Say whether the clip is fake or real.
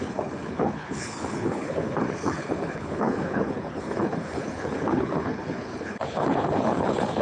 fake